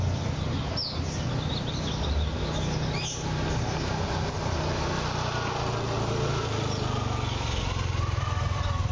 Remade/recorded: recorded